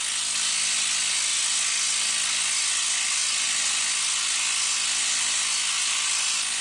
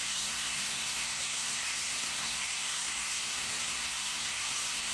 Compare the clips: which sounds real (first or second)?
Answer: first